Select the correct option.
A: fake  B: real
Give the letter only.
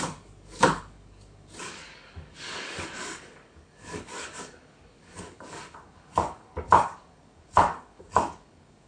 A